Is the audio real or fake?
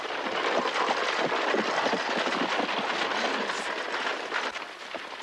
real